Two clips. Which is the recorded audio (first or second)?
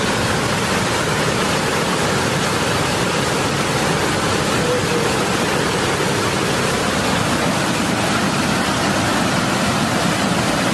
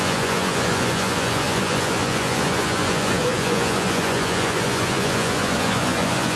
first